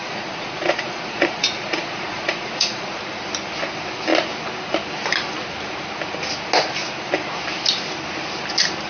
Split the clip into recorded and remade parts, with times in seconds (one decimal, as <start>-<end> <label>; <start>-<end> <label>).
0.0-3.0 remade; 3.0-8.9 recorded